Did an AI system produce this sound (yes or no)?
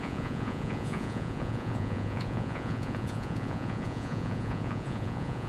yes